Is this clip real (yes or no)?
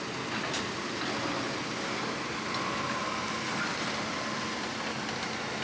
yes